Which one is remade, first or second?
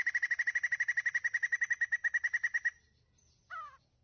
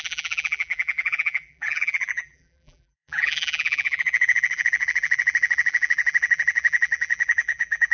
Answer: second